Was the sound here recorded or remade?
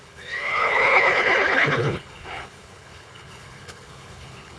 remade